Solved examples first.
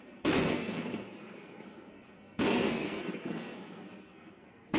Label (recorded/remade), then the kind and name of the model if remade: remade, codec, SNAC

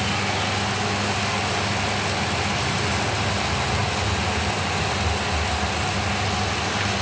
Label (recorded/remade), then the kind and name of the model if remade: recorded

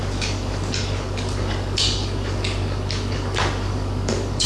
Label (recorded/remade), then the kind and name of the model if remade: remade, codec, DAC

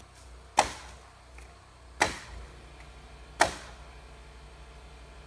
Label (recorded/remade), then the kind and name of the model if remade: recorded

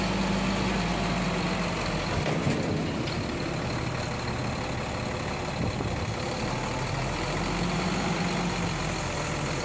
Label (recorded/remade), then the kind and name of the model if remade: recorded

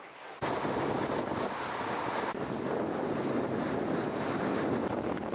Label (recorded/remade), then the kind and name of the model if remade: recorded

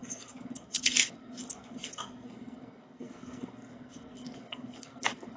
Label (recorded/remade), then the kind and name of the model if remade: remade, codec, SNAC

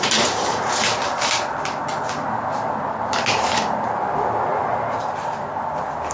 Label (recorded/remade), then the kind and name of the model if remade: recorded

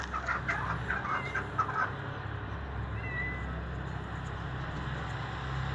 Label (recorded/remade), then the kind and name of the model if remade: recorded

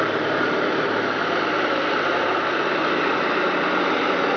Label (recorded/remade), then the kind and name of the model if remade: remade, vocoder, BigVGAN v2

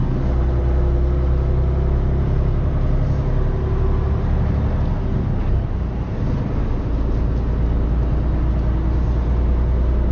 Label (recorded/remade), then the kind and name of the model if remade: recorded